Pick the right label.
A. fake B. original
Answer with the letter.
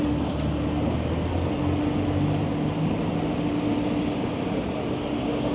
B